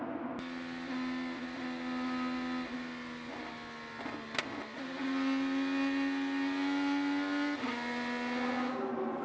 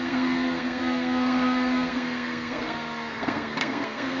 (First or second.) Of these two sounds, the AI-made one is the second